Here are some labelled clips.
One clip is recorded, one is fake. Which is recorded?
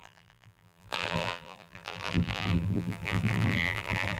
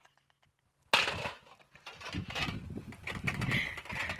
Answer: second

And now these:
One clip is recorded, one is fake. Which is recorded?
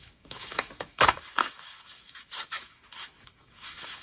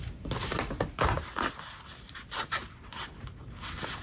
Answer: second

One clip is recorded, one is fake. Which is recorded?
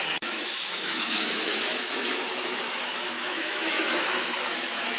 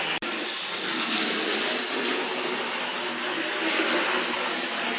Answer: second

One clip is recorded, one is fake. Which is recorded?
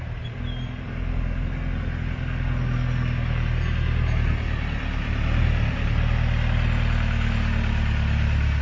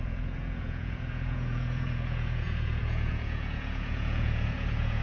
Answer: first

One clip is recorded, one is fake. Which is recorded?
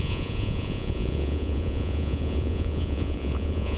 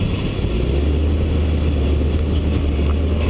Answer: second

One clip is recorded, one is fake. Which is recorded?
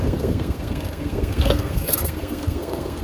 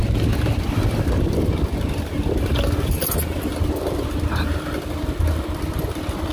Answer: second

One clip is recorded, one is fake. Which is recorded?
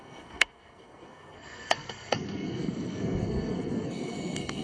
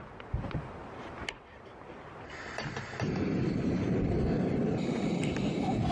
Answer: second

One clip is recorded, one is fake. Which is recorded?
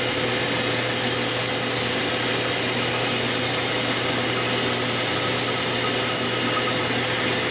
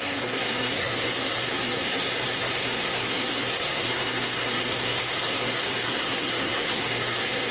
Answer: first